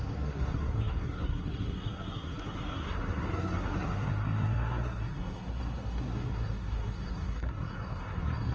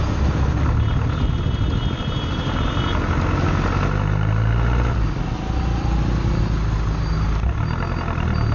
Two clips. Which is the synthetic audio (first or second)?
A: first